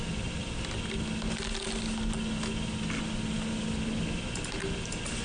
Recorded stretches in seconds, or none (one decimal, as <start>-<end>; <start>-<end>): 0.0-5.2